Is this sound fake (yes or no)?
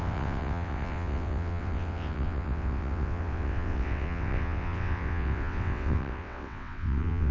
yes